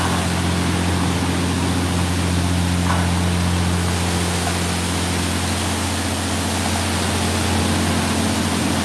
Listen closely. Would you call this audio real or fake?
real